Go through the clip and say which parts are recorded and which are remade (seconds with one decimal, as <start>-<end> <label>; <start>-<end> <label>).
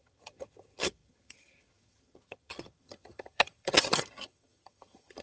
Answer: 0.0-5.2 remade